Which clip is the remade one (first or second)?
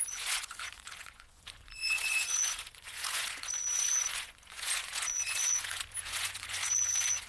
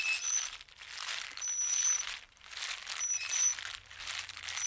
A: first